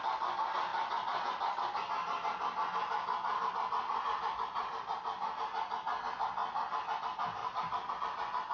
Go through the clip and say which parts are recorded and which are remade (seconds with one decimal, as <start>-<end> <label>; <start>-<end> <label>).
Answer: 0.0-7.4 recorded; 7.4-7.9 remade; 7.9-8.5 recorded